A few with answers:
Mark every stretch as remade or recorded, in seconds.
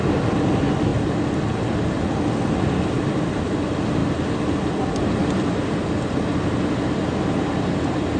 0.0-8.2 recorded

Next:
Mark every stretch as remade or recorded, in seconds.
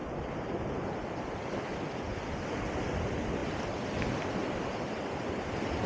0.0-5.9 recorded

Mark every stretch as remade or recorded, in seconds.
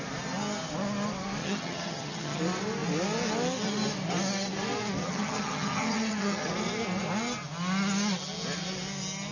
0.0-1.4 recorded; 1.4-2.4 remade; 2.4-5.0 recorded; 5.0-6.5 remade; 6.5-9.3 recorded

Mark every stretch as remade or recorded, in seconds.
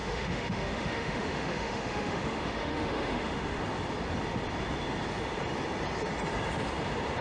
0.0-3.6 remade; 3.6-7.2 recorded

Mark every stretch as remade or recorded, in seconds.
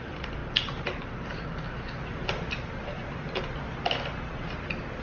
0.0-5.0 recorded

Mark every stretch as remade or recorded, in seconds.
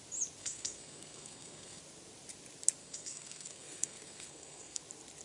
0.0-0.4 recorded; 0.4-1.8 remade; 1.8-2.8 recorded; 2.8-4.8 remade; 4.8-5.2 recorded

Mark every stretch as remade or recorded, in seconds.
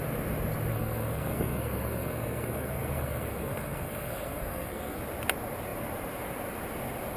0.0-0.7 recorded; 0.7-5.0 remade; 5.0-7.2 recorded